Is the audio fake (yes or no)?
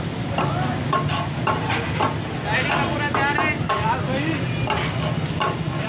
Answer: no